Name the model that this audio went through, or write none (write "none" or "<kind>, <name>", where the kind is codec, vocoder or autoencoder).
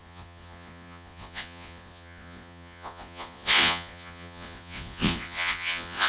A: vocoder, Vocos